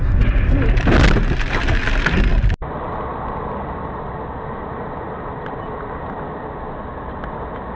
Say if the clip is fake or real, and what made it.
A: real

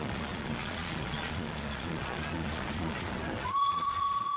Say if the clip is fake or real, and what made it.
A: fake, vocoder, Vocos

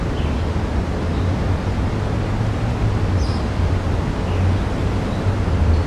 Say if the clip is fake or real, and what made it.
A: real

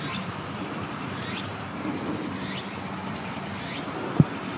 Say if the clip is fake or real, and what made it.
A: real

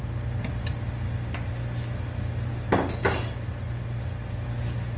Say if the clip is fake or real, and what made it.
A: real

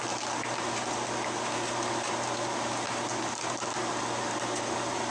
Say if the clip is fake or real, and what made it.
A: real